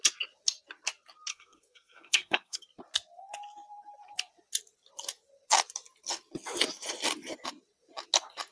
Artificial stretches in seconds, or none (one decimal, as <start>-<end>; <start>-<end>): 1.3-2.6